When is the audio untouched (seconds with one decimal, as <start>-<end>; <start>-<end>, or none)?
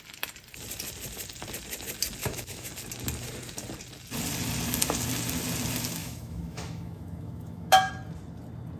0.0-2.2; 2.7-6.0; 7.9-8.8